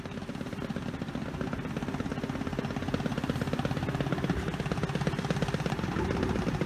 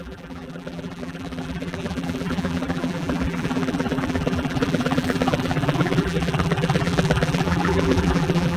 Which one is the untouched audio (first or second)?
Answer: first